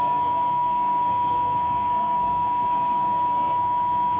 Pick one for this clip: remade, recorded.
remade